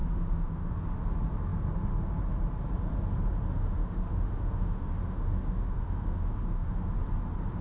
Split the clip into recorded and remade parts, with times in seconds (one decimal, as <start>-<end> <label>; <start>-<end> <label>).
0.0-0.7 remade; 0.7-3.5 recorded; 3.5-6.9 remade; 6.9-7.6 recorded